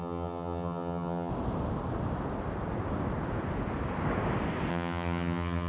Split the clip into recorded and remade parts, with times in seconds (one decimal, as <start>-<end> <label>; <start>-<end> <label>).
0.0-1.3 remade; 1.3-4.7 recorded; 4.7-5.7 remade